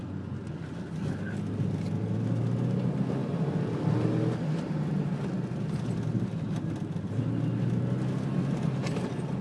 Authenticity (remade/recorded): recorded